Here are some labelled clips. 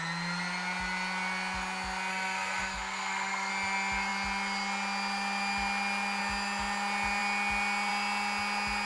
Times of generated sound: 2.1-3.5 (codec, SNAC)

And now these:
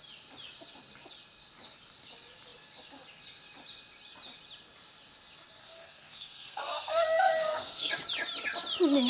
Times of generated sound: 5.6-7.9 (codec, SNAC)

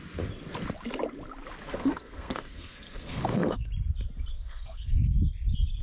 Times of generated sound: 1.7-3.7 (codec, SNAC); 4.3-5.2

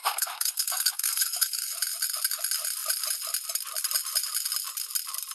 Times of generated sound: 0.0-1.7 (codec, SNAC)

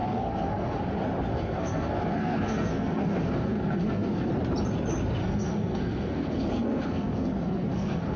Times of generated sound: 0.0-0.8 (codec, SNAC); 1.3-4.3; 5.2-8.2